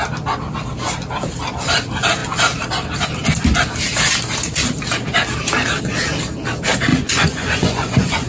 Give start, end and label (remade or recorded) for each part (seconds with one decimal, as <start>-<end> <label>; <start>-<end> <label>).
0.0-6.9 recorded; 6.9-8.3 remade